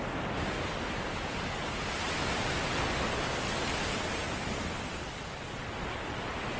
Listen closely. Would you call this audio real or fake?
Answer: real